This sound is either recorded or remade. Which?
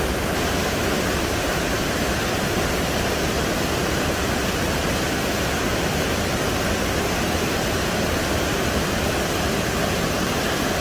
recorded